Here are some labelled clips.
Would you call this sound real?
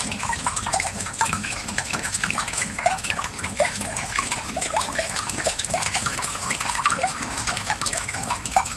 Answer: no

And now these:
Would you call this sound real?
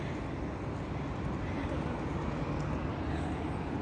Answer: yes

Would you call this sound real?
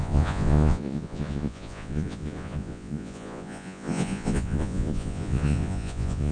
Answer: no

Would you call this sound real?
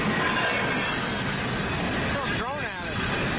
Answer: yes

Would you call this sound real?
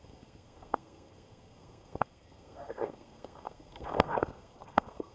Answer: no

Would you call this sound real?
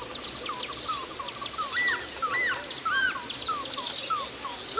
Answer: yes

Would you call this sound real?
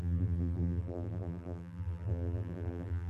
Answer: no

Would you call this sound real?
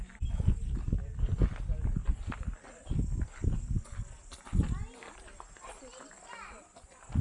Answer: yes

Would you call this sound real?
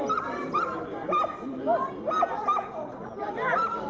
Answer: yes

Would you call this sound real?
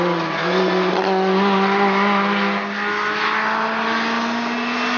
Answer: yes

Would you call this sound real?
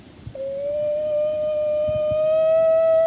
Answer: yes